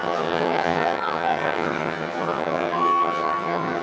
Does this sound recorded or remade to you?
remade